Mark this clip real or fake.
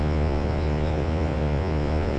fake